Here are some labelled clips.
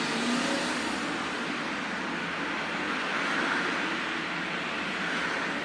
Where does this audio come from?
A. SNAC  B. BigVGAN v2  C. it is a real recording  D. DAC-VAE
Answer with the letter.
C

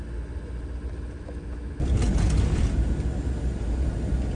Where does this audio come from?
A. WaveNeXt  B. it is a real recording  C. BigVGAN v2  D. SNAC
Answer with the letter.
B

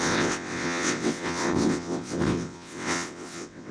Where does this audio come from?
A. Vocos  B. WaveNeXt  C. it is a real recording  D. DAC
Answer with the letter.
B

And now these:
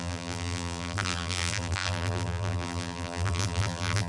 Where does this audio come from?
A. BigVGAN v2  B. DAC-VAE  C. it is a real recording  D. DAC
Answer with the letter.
A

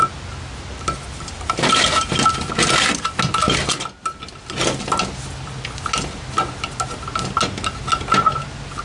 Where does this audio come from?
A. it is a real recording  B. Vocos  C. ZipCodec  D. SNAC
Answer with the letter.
A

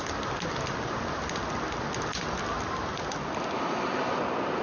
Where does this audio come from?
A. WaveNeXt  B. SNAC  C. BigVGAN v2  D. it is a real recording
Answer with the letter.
D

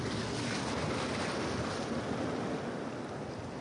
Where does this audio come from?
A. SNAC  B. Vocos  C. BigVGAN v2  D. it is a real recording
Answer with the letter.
D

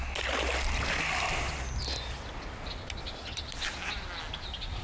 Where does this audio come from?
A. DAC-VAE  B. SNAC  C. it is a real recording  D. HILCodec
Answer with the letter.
C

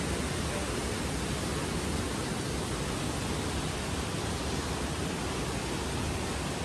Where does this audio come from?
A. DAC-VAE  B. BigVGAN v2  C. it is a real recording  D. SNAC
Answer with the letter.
C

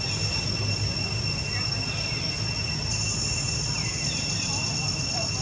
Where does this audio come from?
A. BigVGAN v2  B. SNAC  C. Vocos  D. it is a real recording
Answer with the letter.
D